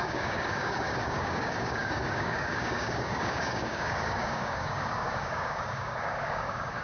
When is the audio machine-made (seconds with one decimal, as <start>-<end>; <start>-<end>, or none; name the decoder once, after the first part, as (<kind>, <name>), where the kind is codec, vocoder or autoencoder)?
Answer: 0.0-6.8 (codec, DAC)